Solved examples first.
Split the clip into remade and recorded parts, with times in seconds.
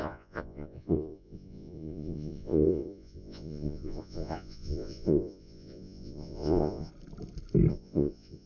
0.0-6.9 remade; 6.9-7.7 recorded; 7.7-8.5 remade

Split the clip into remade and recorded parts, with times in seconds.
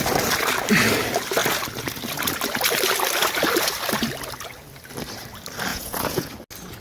0.0-5.7 recorded; 5.7-6.3 remade; 6.3-6.8 recorded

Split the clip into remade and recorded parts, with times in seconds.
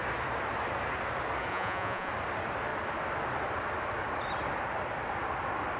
0.0-1.5 recorded; 1.5-2.1 remade; 2.1-5.8 recorded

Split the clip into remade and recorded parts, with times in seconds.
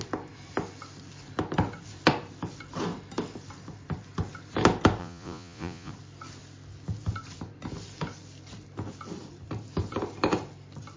0.0-5.0 recorded; 5.0-5.9 remade; 5.9-11.0 recorded